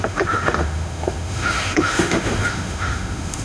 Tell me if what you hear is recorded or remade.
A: remade